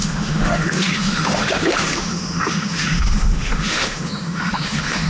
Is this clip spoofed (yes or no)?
yes